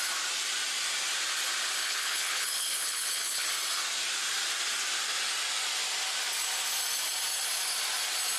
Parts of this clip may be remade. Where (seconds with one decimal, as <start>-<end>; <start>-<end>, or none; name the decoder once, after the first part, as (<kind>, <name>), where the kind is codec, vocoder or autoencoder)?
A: 1.8-3.5 (codec, HILCodec)